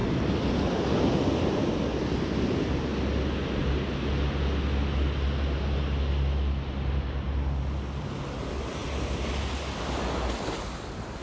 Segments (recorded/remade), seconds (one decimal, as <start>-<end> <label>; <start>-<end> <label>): 0.0-11.2 recorded